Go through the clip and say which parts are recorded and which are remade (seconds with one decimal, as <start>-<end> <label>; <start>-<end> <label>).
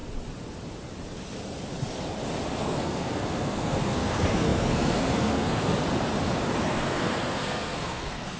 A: 0.0-2.6 recorded; 2.6-5.7 remade; 5.7-6.6 recorded; 6.6-8.4 remade